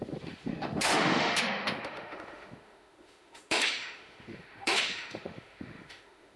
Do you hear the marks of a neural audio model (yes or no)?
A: yes